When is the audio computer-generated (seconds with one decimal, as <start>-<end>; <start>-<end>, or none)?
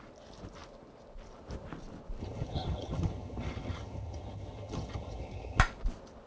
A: 2.2-5.6